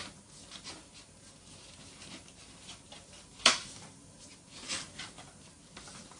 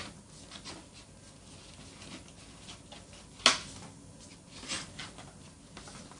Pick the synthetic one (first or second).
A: first